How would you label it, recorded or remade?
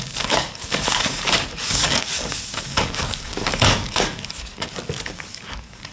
remade